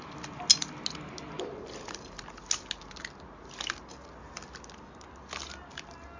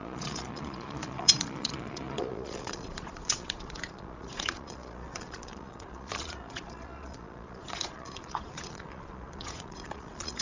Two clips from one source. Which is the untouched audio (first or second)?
first